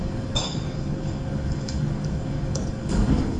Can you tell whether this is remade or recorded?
remade